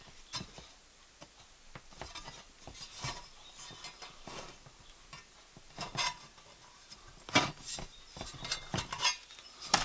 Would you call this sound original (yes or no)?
yes